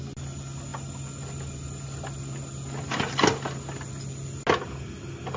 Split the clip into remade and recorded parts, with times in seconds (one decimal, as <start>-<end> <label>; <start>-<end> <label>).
0.0-5.4 recorded